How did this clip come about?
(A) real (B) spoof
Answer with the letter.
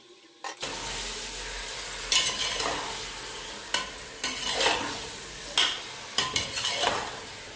A